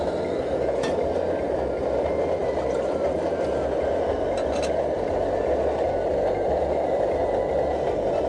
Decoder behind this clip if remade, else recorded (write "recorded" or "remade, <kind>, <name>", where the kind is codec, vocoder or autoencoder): recorded